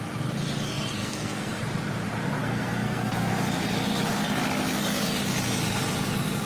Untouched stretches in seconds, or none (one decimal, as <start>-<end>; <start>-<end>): 0.0-1.0; 1.6-2.4; 3.3-6.5

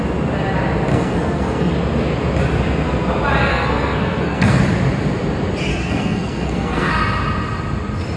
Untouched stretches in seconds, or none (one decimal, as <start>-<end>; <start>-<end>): 0.0-0.9; 1.7-3.5; 4.6-5.7; 6.9-8.2

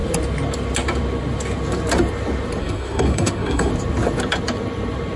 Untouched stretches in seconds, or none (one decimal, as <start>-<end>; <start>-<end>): 0.0-2.6; 3.7-5.2

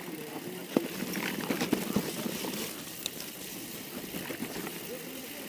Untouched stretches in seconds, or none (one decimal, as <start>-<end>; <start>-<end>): 0.0-5.5

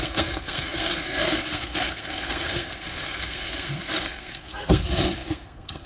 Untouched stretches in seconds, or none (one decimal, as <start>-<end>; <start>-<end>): none